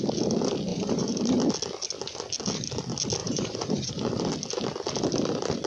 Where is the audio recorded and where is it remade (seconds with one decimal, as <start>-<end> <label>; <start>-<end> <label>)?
0.0-0.7 recorded; 0.7-1.5 remade; 1.5-3.2 recorded; 3.2-4.1 remade; 4.1-5.7 recorded